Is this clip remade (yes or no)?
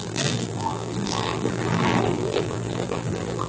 yes